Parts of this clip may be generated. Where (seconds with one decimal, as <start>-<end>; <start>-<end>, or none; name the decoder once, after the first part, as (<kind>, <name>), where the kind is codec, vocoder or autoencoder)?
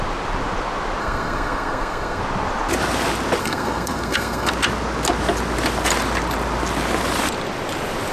1.0-2.2 (codec, SNAC); 3.4-4.5